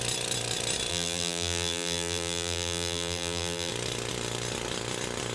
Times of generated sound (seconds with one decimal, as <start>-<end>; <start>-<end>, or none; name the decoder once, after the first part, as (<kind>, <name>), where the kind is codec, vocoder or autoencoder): 0.9-3.7 (vocoder, BigVGAN v2)